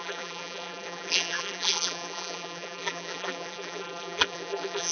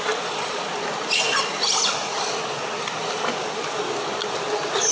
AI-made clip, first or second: first